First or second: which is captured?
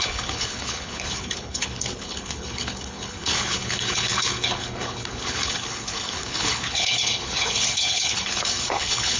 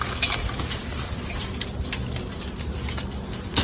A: second